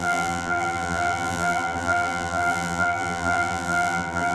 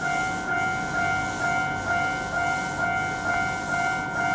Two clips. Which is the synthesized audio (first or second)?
first